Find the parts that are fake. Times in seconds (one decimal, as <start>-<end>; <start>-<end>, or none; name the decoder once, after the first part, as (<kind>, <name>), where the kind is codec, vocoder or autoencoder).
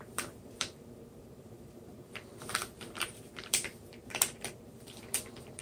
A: 0.0-5.6 (vocoder, BigVGAN v2)